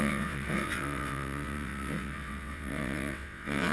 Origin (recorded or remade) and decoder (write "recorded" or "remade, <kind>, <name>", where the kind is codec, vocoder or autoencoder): remade, vocoder, WaveNeXt